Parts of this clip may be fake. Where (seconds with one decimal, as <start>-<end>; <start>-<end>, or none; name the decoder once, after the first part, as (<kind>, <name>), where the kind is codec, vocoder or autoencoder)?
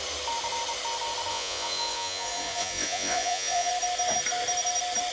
1.3-3.7 (vocoder, Vocos)